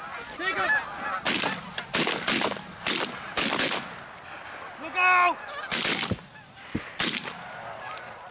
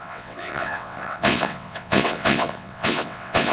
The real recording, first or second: first